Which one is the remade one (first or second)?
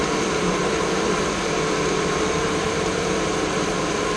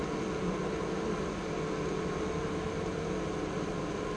first